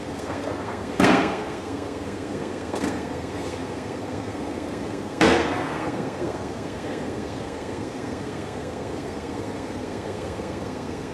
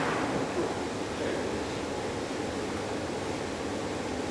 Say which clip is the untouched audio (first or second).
second